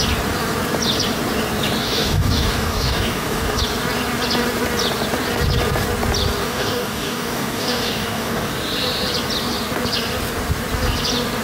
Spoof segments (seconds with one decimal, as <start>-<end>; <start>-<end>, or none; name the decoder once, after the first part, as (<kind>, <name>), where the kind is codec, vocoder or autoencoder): 1.8-3.6 (codec, DAC); 6.4-8.5